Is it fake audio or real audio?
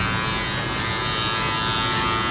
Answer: real